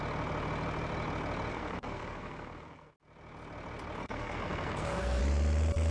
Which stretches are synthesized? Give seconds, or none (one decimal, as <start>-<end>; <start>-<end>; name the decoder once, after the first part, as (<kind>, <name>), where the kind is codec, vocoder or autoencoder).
1.5-2.9 (codec, SNAC); 4.0-5.2